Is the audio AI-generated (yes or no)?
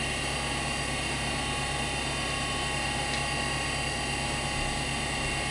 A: no